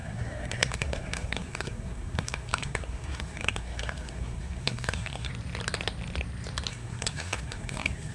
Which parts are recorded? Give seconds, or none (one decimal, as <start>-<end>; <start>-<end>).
5.3-6.7